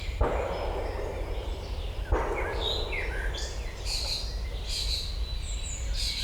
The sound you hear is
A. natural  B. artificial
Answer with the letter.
A